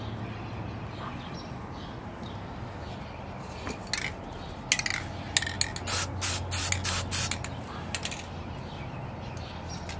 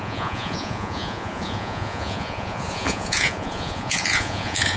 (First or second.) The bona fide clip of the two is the first